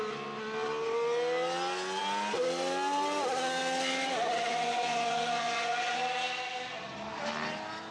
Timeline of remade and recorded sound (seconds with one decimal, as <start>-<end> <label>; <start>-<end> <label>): 0.0-4.2 recorded; 4.2-6.0 remade; 6.0-7.9 recorded